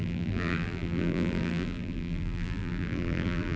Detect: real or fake fake